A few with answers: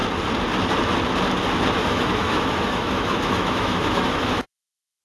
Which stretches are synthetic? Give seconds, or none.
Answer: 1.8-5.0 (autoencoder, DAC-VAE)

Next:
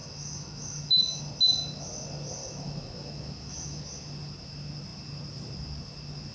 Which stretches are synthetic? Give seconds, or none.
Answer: 0.0-1.2 (autoencoder, DAC-VAE); 2.4-3.8